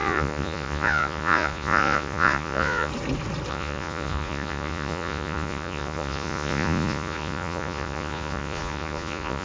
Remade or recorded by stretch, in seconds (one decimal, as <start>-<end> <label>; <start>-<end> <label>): 0.0-2.9 remade; 2.9-3.5 recorded; 3.5-9.4 remade